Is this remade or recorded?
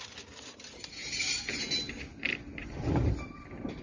recorded